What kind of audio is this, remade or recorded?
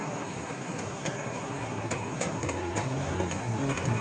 remade